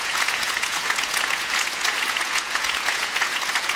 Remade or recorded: remade